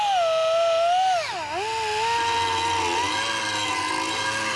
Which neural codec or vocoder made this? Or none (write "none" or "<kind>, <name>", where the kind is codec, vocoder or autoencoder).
none